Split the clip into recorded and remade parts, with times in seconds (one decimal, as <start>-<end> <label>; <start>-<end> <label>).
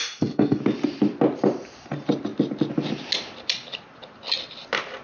0.0-0.6 remade; 0.6-5.0 recorded